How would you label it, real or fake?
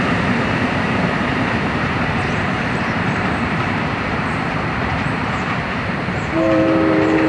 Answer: fake